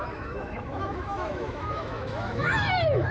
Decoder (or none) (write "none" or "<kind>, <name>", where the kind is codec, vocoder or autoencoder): autoencoder, DAC-VAE